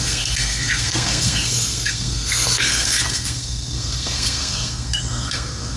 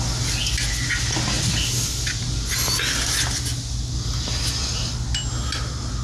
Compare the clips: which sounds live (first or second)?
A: second